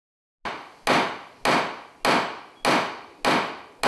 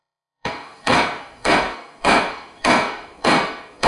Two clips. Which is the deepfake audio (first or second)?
second